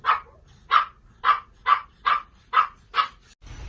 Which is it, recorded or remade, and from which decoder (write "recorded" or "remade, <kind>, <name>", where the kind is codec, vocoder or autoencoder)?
recorded